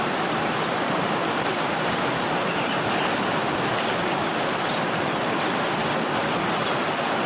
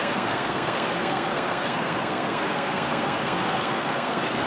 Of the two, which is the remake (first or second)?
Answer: second